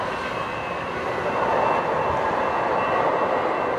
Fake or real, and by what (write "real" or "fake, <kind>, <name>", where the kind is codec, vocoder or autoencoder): real